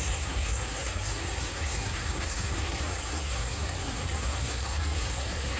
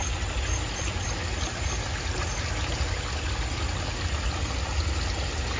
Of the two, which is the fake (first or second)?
first